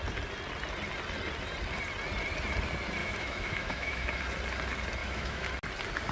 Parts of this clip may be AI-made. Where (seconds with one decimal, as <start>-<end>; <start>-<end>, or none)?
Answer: 3.0-4.2; 5.0-5.5